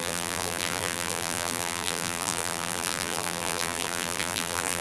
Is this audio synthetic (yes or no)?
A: yes